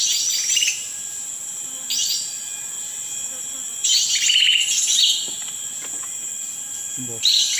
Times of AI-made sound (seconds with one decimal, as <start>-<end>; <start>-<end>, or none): none